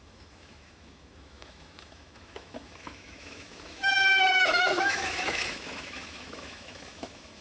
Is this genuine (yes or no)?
no